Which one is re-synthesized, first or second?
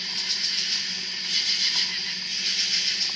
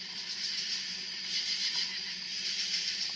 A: second